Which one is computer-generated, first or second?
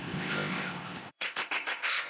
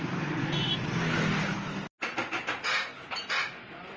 first